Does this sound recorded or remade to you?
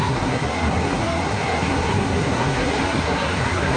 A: remade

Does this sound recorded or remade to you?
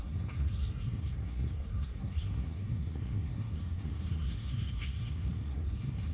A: remade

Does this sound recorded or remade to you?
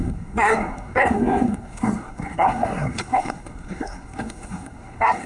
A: remade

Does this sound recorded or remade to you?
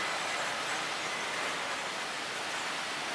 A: recorded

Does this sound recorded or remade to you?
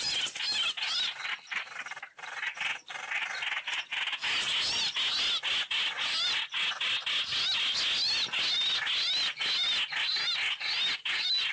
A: recorded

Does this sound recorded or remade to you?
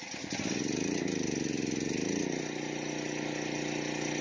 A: recorded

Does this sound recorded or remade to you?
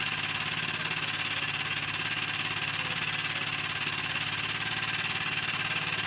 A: recorded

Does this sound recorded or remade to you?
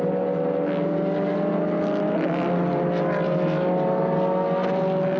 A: recorded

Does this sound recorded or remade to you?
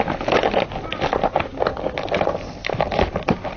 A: recorded